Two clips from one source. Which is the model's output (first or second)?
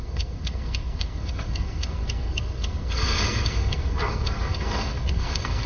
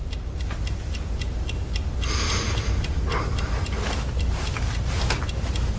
first